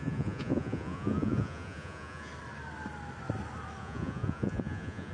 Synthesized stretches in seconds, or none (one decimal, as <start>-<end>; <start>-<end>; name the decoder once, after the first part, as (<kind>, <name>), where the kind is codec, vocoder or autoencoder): 0.0-2.3 (vocoder, Vocos); 3.8-5.1